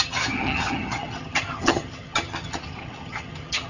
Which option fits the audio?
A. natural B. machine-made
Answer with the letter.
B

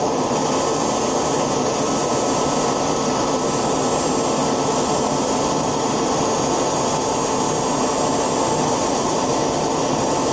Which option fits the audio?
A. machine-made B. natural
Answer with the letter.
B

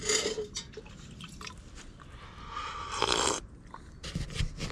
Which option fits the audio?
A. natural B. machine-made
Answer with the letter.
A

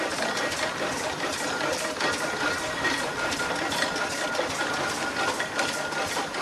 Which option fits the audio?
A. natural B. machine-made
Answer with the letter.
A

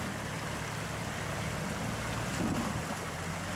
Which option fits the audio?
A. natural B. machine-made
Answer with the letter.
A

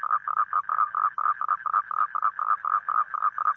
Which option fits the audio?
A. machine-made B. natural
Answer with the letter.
B